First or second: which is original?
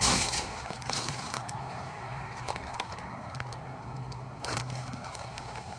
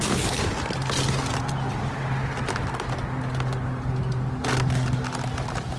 second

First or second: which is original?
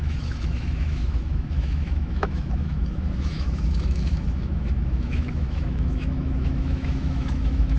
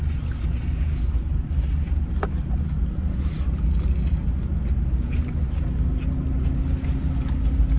second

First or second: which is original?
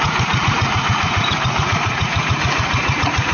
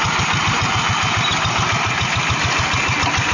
second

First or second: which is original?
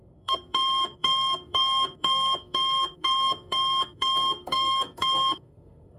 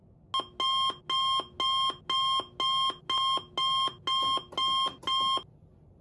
second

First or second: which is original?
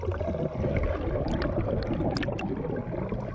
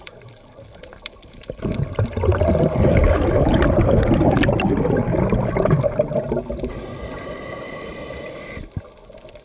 first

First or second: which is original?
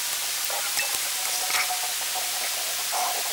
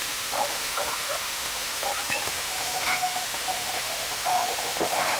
first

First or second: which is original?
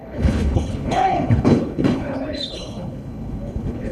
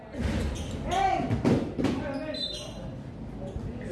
second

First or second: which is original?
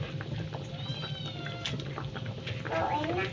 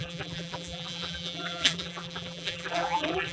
first